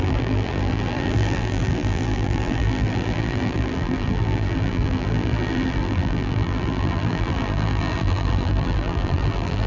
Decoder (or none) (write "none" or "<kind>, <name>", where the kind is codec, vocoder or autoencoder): vocoder, BigVGAN v2